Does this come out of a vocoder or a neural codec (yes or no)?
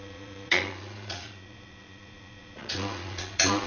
yes